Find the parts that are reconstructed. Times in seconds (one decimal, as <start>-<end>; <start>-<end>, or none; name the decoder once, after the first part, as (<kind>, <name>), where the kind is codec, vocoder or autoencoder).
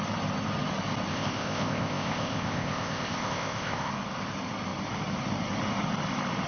1.1-3.9 (codec, ZipCodec)